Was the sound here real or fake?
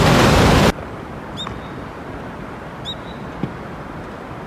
real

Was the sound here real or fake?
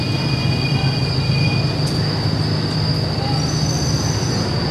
real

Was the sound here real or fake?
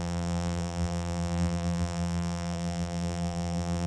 fake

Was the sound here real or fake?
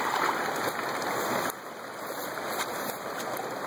fake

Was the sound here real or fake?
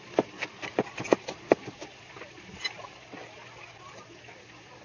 real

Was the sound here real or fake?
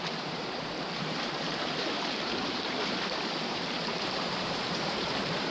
fake